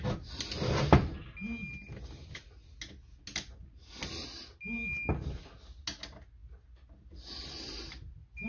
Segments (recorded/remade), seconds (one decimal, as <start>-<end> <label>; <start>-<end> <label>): 0.0-8.5 recorded